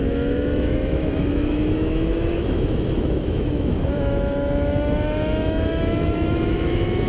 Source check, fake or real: fake